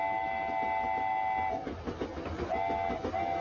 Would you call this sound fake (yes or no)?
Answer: no